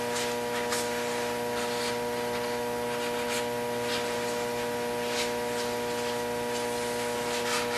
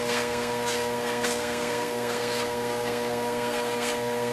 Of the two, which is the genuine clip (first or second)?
first